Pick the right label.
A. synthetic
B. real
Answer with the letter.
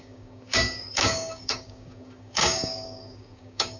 A